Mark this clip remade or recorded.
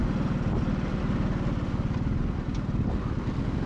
recorded